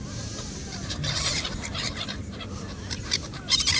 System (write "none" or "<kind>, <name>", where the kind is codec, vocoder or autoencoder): vocoder, BigVGAN v2